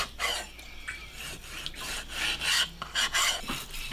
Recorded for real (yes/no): yes